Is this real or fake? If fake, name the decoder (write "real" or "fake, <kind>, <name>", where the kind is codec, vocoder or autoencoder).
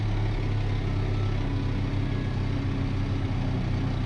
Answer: real